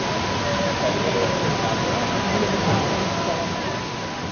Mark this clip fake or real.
real